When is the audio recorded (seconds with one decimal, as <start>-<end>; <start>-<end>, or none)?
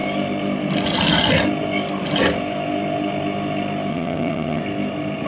0.0-3.9; 4.6-5.3